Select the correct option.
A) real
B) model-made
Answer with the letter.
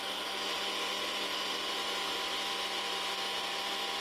B